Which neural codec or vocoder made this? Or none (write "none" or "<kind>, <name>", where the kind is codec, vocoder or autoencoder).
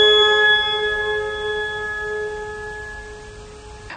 none